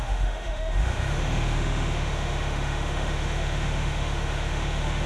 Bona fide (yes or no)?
no